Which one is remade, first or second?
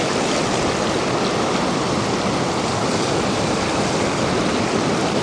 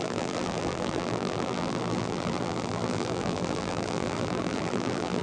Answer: second